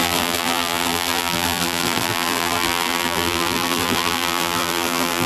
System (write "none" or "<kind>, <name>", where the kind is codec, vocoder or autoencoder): vocoder, BigVGAN v2